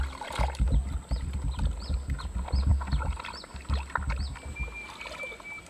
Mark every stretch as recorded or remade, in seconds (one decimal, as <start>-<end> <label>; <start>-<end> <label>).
0.0-5.7 recorded